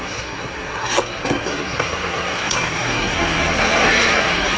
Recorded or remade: remade